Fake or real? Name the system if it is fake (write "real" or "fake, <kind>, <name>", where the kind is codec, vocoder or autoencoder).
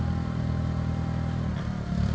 real